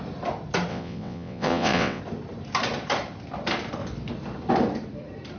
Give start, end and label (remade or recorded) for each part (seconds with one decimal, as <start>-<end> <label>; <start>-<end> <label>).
0.0-0.7 recorded; 0.7-2.0 remade; 2.0-5.4 recorded

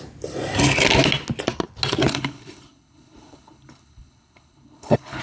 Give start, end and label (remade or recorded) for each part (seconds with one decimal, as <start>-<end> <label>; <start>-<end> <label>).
0.0-2.1 recorded; 2.1-5.2 remade

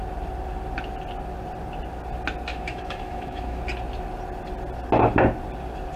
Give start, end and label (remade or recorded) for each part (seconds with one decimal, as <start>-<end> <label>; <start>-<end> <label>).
0.0-2.5 recorded; 2.5-3.6 remade; 3.6-6.0 recorded

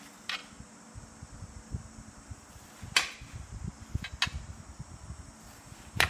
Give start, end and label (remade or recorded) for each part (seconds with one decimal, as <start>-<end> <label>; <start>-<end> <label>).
0.0-6.1 recorded

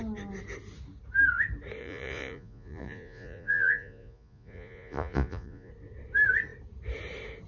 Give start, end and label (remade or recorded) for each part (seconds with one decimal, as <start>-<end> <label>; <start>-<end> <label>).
0.0-1.8 recorded; 1.8-5.7 remade; 5.7-7.5 recorded

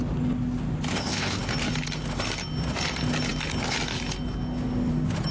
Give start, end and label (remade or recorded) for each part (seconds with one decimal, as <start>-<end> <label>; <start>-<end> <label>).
0.0-0.9 recorded; 0.9-1.4 remade; 1.4-5.3 recorded